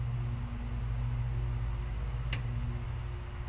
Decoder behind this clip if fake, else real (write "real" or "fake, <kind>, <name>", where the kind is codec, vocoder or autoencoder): real